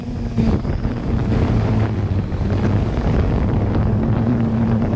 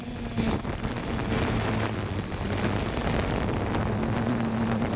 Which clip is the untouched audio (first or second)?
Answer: second